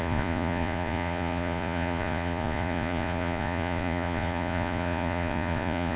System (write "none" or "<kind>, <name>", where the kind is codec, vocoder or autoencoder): vocoder, Vocos